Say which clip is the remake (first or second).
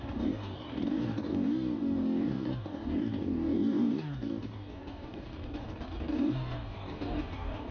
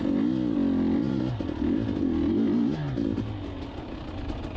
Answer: first